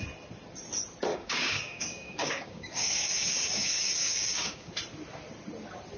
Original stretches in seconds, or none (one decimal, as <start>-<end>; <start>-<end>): 0.0-1.1; 4.7-6.0